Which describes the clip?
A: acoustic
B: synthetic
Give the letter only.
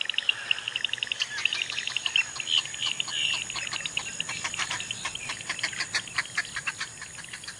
A